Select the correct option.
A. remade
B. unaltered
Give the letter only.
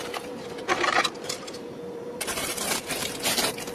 A